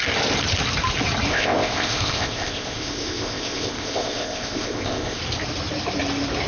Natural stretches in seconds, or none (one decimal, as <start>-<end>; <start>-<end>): 0.0-1.3; 5.2-6.5